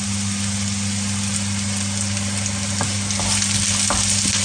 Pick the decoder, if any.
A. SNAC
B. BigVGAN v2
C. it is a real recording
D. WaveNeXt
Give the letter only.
C